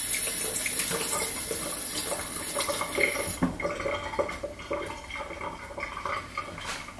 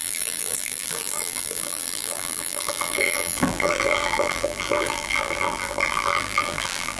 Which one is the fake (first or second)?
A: second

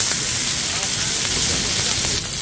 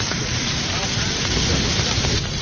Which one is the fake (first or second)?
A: second